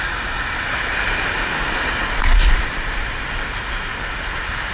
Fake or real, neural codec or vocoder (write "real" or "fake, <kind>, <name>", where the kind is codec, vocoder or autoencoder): real